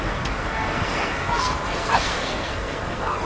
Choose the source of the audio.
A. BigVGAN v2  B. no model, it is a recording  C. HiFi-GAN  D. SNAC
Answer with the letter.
D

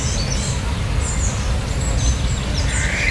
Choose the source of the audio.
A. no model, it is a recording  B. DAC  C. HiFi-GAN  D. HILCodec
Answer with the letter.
A